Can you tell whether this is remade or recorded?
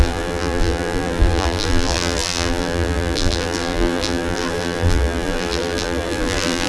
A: remade